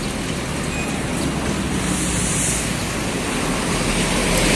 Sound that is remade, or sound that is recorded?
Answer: recorded